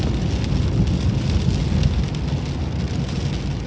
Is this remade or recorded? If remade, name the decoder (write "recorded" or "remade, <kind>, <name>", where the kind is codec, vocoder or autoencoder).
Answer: recorded